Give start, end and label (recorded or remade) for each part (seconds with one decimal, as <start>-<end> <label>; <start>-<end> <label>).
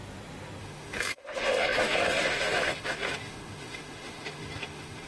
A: 0.0-0.6 recorded; 0.6-5.1 remade